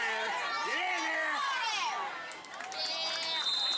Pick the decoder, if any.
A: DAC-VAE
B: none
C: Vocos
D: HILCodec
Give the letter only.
B